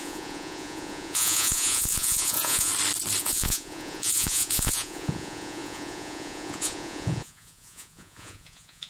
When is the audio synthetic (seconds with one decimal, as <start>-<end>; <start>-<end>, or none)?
0.0-2.7; 3.2-8.9